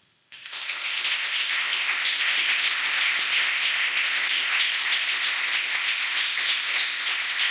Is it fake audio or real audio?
fake